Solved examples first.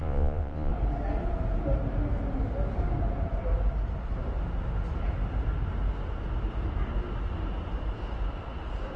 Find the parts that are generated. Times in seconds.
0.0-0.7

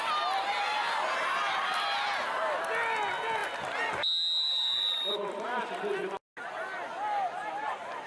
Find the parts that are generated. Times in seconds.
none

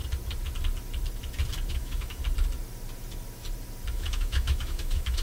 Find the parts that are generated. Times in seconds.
1.7-2.2; 3.9-5.2

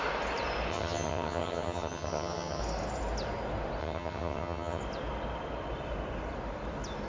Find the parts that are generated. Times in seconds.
0.7-2.6; 3.8-4.8